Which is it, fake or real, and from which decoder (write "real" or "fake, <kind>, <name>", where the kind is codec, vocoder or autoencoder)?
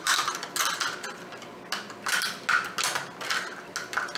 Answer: real